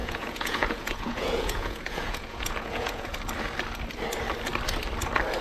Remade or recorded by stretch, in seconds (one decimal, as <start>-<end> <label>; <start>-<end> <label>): 0.0-3.2 remade; 3.2-5.4 recorded

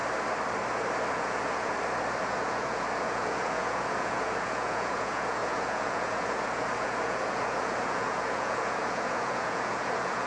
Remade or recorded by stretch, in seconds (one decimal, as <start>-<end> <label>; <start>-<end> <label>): 0.0-1.1 recorded; 1.1-1.7 remade; 1.7-2.2 recorded; 2.2-10.3 remade